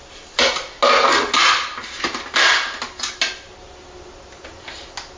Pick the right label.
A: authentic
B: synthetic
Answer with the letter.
A